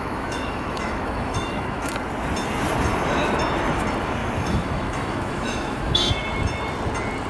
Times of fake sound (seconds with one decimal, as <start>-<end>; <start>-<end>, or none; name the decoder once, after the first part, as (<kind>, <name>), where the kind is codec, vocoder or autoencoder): 0.0-1.9 (autoencoder, DAC-VAE); 4.2-6.1